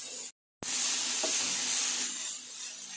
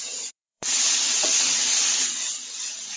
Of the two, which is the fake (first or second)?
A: second